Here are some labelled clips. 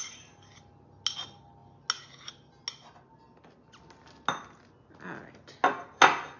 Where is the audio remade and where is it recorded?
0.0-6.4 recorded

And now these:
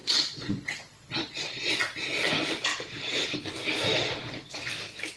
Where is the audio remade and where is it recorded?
0.0-1.7 remade; 1.7-2.7 recorded; 2.7-3.4 remade; 3.4-3.9 recorded; 3.9-4.7 remade; 4.7-5.2 recorded

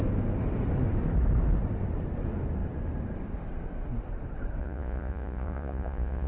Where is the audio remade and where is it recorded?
0.0-4.6 recorded; 4.6-6.3 remade

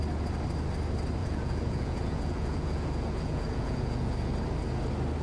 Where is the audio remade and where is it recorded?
0.0-1.2 recorded; 1.2-4.3 remade; 4.3-5.2 recorded